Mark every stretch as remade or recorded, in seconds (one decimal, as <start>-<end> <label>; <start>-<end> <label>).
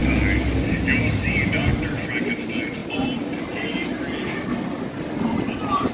0.0-5.9 recorded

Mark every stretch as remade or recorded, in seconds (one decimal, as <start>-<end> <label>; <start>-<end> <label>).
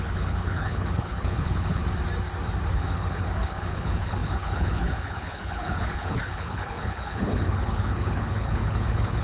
0.0-1.8 remade; 1.8-2.7 recorded; 2.7-9.2 remade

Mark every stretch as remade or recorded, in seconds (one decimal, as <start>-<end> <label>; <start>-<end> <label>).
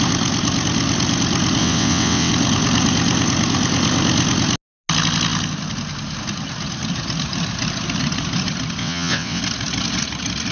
0.0-1.6 recorded; 1.6-2.3 remade; 2.3-8.8 recorded; 8.8-9.4 remade; 9.4-10.5 recorded